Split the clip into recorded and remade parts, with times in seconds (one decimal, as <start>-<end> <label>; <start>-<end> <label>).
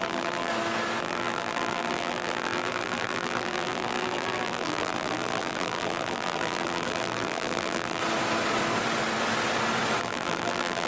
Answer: 0.0-0.5 remade; 0.5-1.0 recorded; 1.0-8.0 remade; 8.0-10.0 recorded; 10.0-10.9 remade